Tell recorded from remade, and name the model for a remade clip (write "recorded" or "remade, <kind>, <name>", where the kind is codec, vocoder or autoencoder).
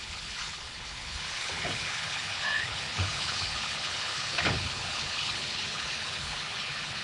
remade, codec, HILCodec